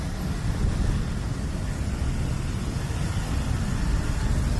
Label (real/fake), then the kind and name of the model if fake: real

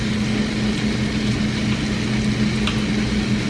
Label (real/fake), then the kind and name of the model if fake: real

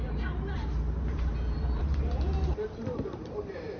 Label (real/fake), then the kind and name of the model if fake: fake, vocoder, BigVGAN v2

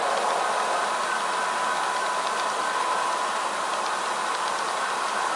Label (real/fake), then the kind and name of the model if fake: real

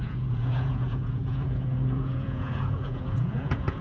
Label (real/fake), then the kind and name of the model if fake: fake, vocoder, Vocos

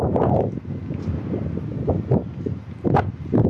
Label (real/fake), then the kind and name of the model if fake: real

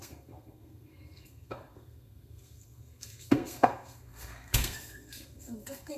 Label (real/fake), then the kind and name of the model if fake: fake, codec, SNAC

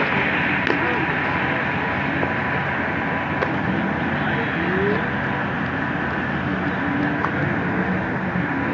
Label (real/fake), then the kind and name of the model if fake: real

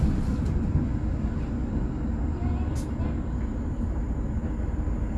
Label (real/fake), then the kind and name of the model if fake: real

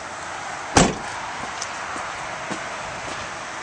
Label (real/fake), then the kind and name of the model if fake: real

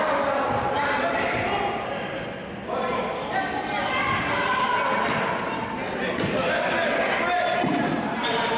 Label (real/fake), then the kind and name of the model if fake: real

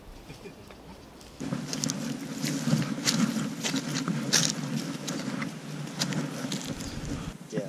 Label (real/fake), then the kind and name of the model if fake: real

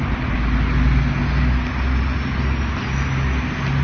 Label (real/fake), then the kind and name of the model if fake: real